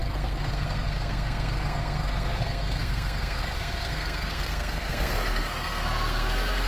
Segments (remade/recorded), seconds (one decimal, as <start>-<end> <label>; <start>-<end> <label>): 0.0-6.7 remade